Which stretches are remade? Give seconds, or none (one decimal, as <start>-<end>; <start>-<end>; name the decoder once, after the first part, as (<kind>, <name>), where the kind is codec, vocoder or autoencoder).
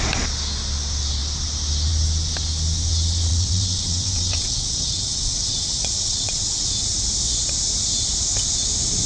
3.3-6.7 (vocoder, WaveNeXt)